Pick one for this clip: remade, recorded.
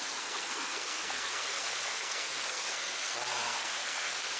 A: remade